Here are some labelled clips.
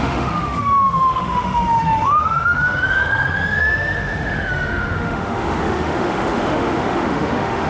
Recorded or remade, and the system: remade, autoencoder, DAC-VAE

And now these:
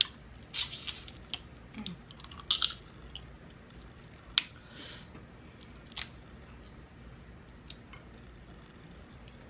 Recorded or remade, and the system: recorded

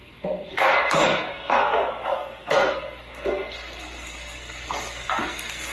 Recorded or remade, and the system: remade, codec, SNAC